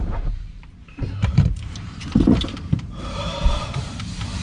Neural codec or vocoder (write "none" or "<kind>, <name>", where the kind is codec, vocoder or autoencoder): vocoder, BigVGAN v2